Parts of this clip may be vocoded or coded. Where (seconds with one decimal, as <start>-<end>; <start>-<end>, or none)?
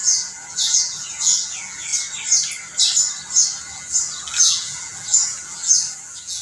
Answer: 0.0-1.9; 3.6-6.4